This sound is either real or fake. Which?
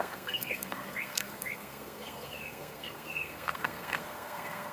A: fake